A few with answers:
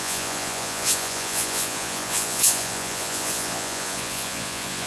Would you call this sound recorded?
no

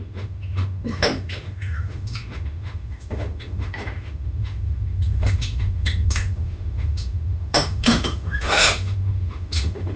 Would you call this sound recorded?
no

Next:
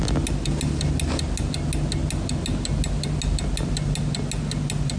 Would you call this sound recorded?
yes